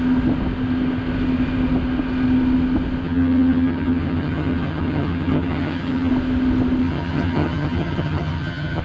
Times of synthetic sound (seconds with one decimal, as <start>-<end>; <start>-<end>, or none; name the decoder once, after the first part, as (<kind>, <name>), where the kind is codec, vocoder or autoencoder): 3.0-6.1 (vocoder, HiFi-GAN); 6.8-8.8